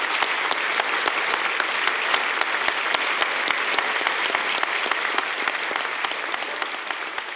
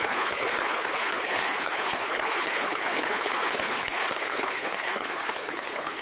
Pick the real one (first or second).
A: first